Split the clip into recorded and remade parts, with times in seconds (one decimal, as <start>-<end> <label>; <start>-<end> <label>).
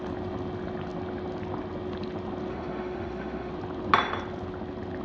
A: 0.0-2.5 recorded; 2.5-3.5 remade; 3.5-5.0 recorded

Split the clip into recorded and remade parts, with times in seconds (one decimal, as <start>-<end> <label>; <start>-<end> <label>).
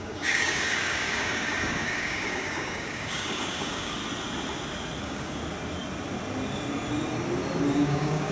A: 0.0-4.0 remade; 4.0-5.0 recorded; 5.0-5.4 remade; 5.4-7.7 recorded; 7.7-8.3 remade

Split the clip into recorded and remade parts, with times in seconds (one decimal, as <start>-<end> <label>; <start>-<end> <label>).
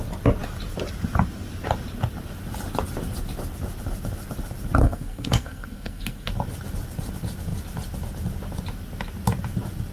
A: 0.0-4.8 recorded; 4.8-6.3 remade; 6.3-9.9 recorded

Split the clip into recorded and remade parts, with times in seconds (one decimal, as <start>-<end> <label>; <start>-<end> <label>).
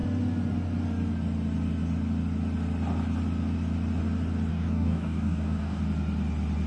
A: 0.0-4.5 recorded; 4.5-5.8 remade; 5.8-6.7 recorded